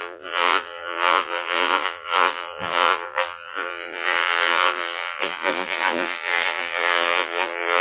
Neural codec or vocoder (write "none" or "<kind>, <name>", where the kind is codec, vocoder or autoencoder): vocoder, BigVGAN v2